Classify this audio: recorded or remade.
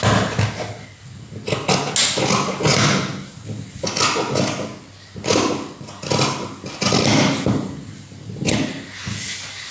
recorded